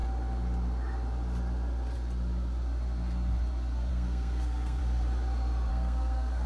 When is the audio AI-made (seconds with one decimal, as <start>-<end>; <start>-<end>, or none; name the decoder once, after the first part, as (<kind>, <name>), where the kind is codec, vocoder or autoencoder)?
3.9-4.8 (codec, SNAC); 5.7-6.5